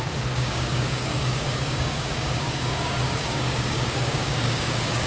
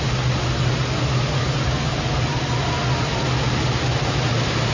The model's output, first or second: first